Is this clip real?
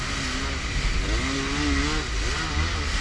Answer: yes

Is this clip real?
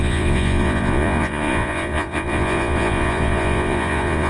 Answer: no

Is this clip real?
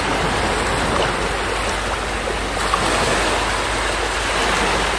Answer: yes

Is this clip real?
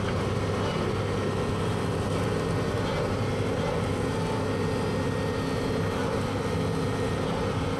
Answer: yes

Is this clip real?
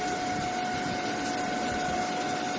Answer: yes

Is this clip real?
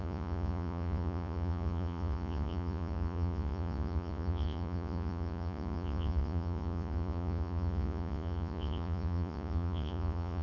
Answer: no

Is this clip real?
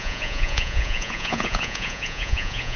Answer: no